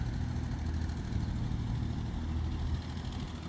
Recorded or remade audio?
recorded